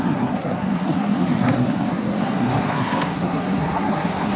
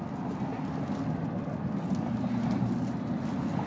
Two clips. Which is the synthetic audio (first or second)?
first